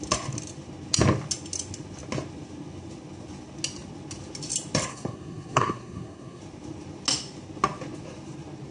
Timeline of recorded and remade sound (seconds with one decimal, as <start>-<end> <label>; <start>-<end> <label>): 0.0-4.9 recorded; 4.9-6.4 remade; 6.4-8.7 recorded